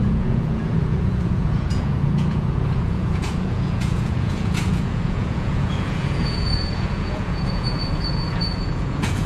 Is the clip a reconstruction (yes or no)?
yes